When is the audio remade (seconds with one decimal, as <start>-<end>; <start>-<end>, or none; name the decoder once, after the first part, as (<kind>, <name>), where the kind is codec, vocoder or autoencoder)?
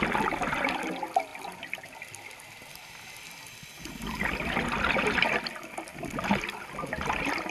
none